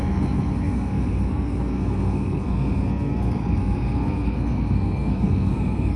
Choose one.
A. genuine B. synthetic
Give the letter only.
B